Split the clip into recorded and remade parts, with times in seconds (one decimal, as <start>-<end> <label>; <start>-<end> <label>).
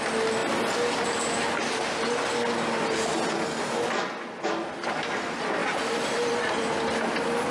0.0-5.6 recorded; 5.6-6.5 remade; 6.5-7.5 recorded